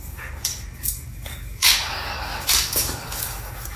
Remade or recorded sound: remade